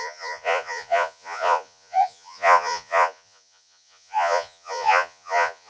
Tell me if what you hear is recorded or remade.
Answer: remade